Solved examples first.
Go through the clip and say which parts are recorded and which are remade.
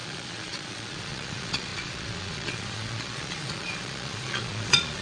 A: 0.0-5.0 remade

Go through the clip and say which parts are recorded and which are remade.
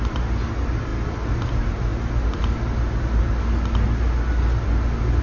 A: 0.0-5.2 recorded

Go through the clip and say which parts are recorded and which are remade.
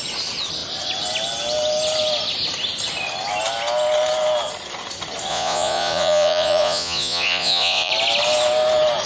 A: 0.0-5.3 recorded; 5.3-7.9 remade; 7.9-9.1 recorded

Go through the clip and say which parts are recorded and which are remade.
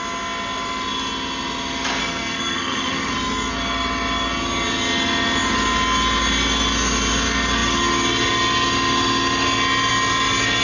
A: 0.0-2.0 recorded; 2.0-3.1 remade; 3.1-10.6 recorded